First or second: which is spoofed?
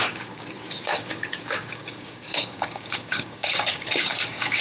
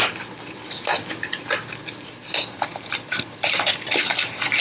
first